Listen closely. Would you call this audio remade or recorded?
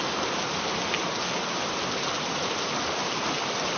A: recorded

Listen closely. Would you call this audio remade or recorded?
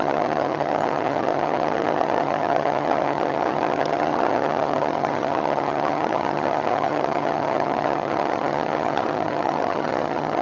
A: remade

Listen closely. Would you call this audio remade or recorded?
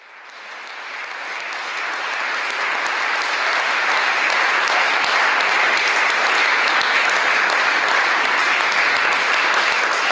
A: recorded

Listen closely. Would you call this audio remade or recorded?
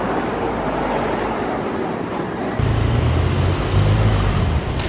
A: recorded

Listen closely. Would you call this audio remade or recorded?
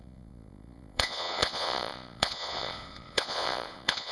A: remade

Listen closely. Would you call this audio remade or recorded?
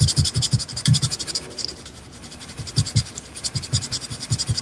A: remade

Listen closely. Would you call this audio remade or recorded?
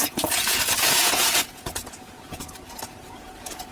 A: remade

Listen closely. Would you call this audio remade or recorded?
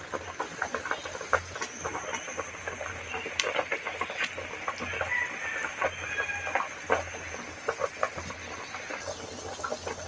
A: recorded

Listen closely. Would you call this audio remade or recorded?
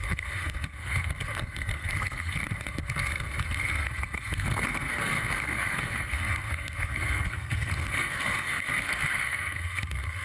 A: remade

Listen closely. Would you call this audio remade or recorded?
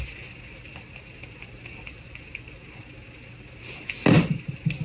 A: recorded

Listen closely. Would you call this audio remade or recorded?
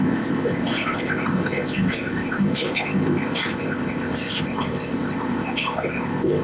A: remade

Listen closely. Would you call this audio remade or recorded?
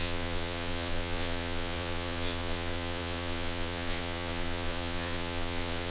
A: remade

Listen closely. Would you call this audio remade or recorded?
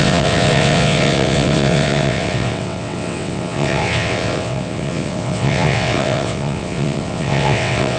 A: remade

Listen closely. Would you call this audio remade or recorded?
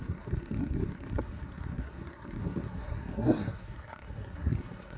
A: remade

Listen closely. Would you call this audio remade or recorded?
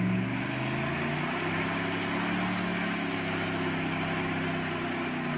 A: recorded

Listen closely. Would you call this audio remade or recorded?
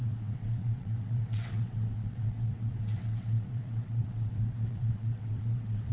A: remade